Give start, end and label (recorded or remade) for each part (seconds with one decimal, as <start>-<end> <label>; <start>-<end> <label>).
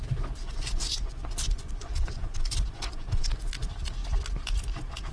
0.0-0.4 recorded; 0.4-3.5 remade; 3.5-5.1 recorded